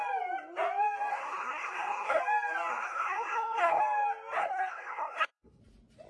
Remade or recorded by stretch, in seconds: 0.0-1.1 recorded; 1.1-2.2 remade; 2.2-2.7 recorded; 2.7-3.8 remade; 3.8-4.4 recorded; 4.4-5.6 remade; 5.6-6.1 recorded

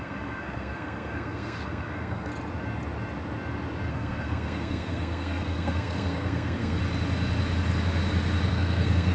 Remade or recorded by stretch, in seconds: 0.0-2.3 remade; 2.3-3.9 recorded; 3.9-6.8 remade; 6.8-8.5 recorded; 8.5-9.1 remade

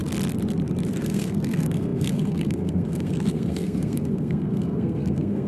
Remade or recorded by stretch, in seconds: 0.0-1.0 recorded; 1.0-5.5 remade

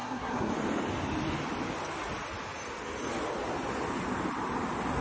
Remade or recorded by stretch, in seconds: 0.0-0.5 remade; 0.5-5.0 recorded

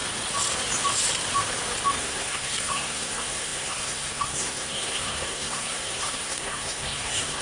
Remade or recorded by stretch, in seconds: 0.0-2.0 recorded; 2.0-7.4 remade

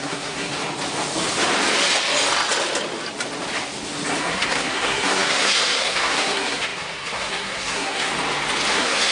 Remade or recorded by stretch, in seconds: 0.0-0.5 remade; 0.5-4.2 recorded; 4.2-8.1 remade; 8.1-8.7 recorded; 8.7-9.1 remade

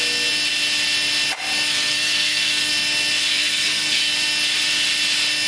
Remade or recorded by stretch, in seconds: 0.0-1.7 recorded; 1.7-2.7 remade; 2.7-3.3 recorded; 3.3-4.0 remade; 4.0-5.5 recorded

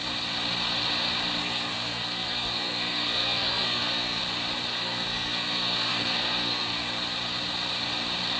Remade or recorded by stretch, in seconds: 0.0-1.4 recorded; 1.4-4.2 remade; 4.2-4.8 recorded; 4.8-6.9 remade; 6.9-8.4 recorded